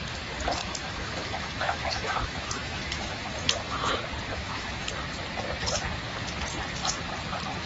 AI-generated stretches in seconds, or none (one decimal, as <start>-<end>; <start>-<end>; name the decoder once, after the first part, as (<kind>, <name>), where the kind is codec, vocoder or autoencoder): 0.6-3.9 (autoencoder, DAC-VAE); 4.3-4.9